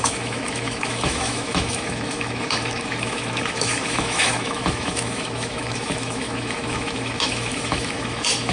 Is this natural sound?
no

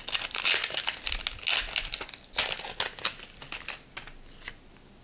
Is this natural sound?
yes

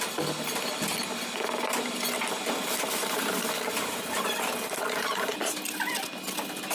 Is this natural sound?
yes